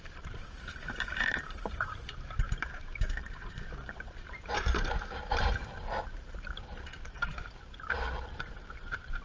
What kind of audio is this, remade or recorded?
remade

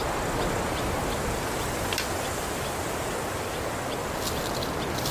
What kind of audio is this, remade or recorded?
recorded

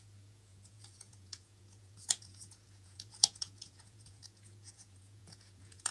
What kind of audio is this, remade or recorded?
remade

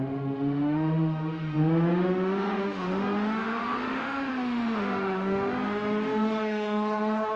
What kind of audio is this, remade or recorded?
remade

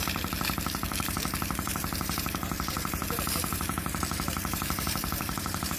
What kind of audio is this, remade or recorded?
remade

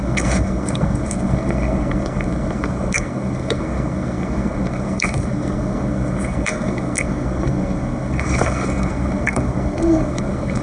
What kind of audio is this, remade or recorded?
remade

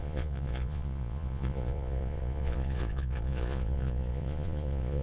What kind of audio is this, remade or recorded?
remade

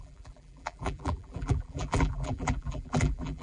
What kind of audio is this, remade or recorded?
remade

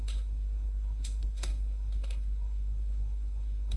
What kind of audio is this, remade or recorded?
remade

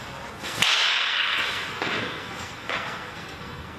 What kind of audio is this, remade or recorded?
remade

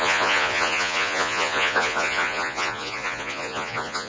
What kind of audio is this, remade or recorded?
remade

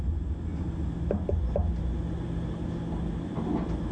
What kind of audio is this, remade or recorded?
recorded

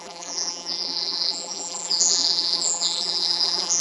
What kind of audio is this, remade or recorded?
remade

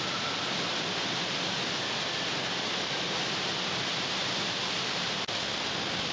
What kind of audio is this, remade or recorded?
recorded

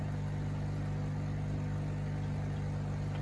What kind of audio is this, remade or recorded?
recorded